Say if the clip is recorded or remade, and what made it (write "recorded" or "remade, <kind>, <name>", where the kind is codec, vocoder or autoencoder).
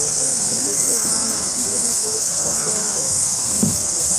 remade, codec, SNAC